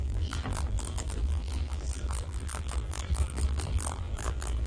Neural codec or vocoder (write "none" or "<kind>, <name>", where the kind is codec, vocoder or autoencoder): vocoder, BigVGAN v2